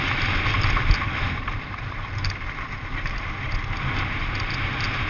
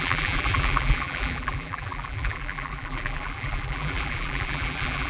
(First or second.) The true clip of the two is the first